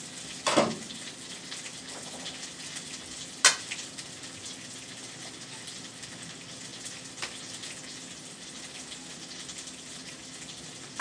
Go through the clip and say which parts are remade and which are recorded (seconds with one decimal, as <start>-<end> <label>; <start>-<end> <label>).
0.0-11.0 recorded